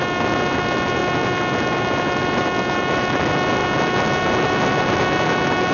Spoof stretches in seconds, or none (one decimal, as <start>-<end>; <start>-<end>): none